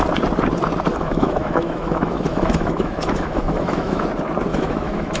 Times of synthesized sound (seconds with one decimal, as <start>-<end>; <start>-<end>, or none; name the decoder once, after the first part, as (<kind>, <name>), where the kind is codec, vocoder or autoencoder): 0.9-4.0 (autoencoder, DAC-VAE); 4.5-5.2